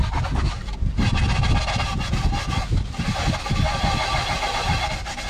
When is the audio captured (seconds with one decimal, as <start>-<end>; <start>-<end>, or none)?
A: 0.0-0.5; 1.1-4.3